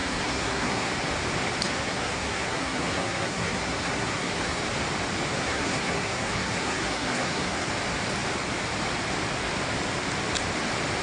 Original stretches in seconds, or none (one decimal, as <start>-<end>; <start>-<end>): 0.9-1.7; 4.6-5.4; 7.7-11.0